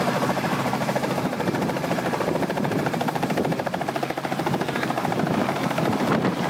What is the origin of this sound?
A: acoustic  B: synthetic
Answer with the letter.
B